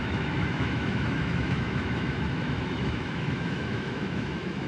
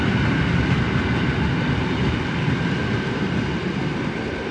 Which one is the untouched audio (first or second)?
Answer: second